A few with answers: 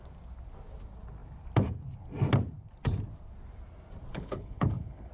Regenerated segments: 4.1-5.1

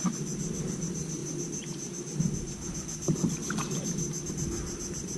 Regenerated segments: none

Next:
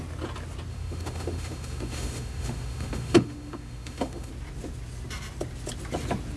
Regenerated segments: 0.7-4.3

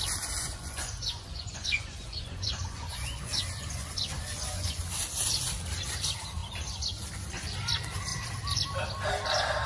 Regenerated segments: 0.4-4.8

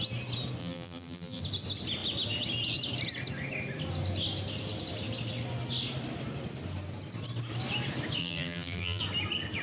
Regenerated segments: 0.6-1.4; 8.2-9.0

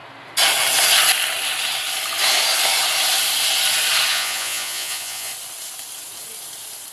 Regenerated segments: 4.1-5.3

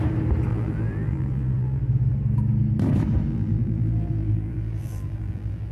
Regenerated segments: 0.5-1.8; 3.3-5.7

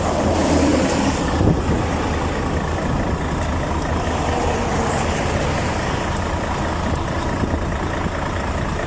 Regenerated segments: none